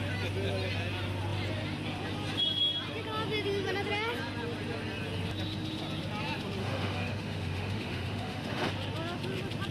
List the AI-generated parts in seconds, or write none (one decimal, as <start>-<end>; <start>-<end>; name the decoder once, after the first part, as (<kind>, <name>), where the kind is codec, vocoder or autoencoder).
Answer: 6.6-8.7 (autoencoder, DAC-VAE)